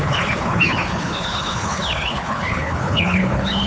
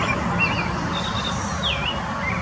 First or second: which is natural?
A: second